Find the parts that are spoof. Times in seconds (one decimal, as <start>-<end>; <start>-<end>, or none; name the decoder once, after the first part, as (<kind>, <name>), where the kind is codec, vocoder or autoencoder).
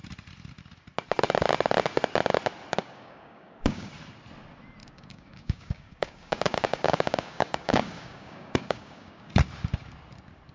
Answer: 2.8-3.9 (codec, DAC); 4.8-9.3